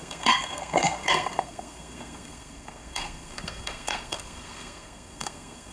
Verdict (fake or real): fake